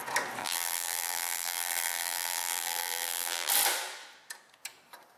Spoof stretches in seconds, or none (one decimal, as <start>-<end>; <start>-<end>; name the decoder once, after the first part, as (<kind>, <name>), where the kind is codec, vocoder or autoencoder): 0.4-3.5 (vocoder, BigVGAN v2)

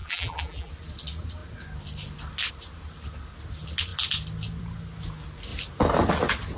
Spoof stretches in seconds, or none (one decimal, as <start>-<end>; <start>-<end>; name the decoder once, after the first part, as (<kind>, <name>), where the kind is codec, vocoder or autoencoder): 0.0-0.7 (vocoder, BigVGAN v2)

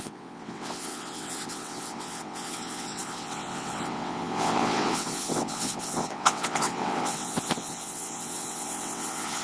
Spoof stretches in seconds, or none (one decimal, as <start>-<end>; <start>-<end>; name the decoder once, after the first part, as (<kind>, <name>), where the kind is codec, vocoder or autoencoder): 0.0-9.4 (vocoder, WaveNeXt)

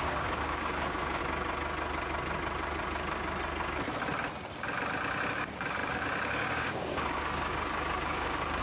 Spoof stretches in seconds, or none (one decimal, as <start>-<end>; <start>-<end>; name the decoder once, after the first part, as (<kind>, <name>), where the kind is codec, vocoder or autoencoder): 0.0-1.2 (codec, DAC); 5.3-8.6

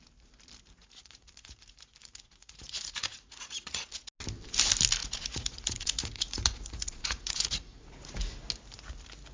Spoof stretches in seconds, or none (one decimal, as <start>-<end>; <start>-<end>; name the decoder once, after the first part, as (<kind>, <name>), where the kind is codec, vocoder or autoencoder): 0.8-3.9 (vocoder, Vocos); 5.0-8.2

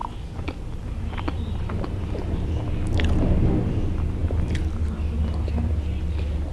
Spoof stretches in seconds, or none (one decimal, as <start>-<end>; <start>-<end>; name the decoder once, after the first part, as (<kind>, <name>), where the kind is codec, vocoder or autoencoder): none